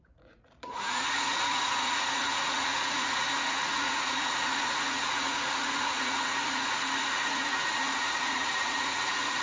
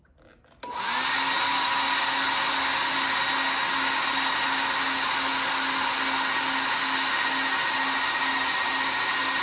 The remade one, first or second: first